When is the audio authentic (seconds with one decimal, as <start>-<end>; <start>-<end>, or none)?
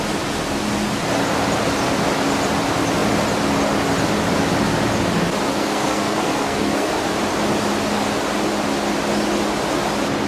0.0-5.5; 6.9-10.3